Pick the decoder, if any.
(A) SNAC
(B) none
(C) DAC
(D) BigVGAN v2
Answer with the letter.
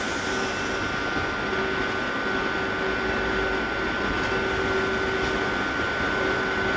B